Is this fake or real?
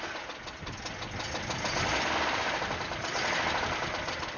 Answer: real